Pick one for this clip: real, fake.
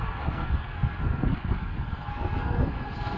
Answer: fake